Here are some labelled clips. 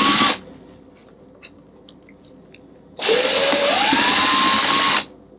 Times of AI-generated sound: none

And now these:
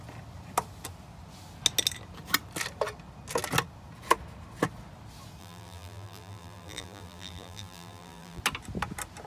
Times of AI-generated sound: 5.4-8.4 (vocoder, BigVGAN v2)

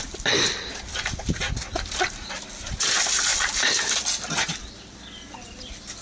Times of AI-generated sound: none